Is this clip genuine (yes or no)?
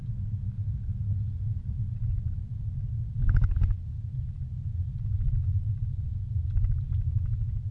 yes